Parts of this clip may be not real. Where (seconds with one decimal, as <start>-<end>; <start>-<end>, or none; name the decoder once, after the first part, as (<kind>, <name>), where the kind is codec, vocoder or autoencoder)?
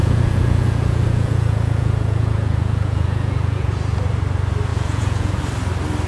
0.0-3.7 (vocoder, Vocos); 4.7-5.4